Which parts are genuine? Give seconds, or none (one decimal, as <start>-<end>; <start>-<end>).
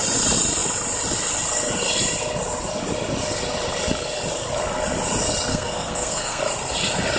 0.0-5.5; 6.4-7.2